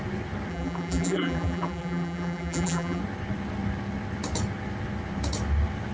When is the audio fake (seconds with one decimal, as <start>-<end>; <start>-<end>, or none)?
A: 0.5-3.0